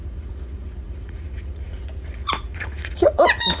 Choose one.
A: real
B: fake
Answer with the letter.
B